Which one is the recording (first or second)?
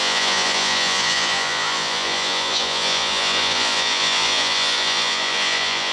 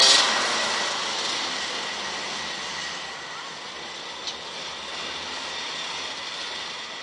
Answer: second